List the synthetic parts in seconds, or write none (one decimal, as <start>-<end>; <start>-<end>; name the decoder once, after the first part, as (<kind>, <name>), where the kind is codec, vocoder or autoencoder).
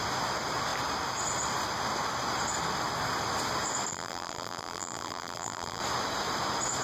3.9-5.8 (vocoder, BigVGAN v2)